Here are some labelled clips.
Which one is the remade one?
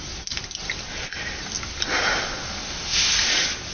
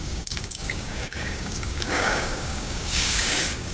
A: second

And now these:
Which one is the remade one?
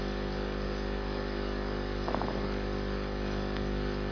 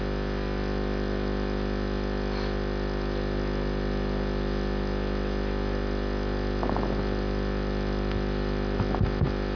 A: first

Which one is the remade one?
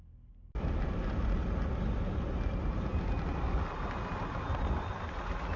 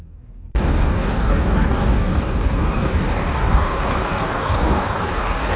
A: second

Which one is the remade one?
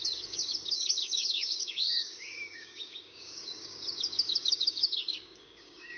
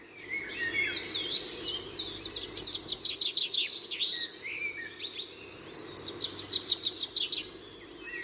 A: first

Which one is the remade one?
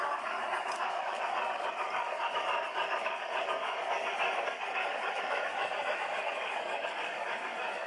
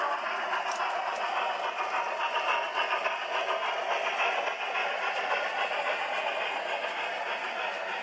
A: first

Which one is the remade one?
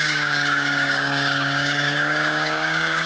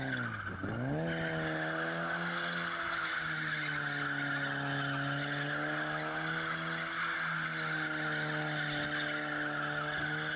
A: first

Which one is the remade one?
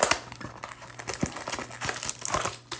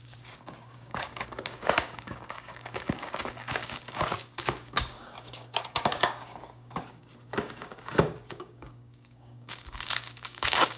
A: second